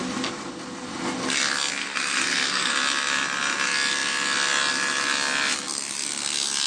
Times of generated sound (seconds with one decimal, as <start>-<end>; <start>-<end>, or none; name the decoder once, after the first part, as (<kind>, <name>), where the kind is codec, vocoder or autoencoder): 1.8-2.7 (codec, SNAC)